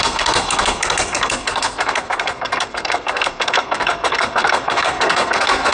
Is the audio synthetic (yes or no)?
yes